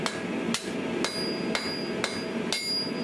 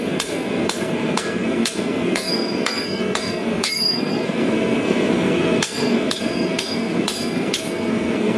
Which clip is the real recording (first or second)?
first